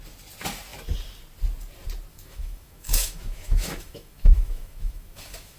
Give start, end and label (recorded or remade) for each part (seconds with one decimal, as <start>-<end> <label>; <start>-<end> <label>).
0.0-2.1 recorded; 2.1-5.6 remade